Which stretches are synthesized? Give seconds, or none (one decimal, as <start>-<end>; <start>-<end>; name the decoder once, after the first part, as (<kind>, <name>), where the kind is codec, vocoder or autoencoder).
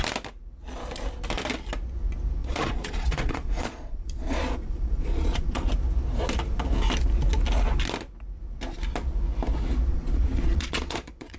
2.4-5.7 (vocoder, Vocos); 9.9-11.4